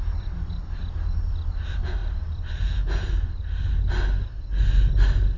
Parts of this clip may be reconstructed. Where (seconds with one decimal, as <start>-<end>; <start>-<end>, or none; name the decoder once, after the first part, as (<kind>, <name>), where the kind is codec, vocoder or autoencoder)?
none